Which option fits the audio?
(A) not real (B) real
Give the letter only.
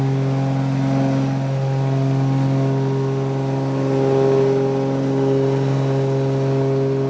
B